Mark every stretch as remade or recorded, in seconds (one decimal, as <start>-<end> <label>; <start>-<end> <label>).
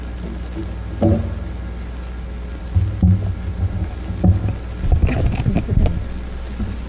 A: 0.0-6.9 recorded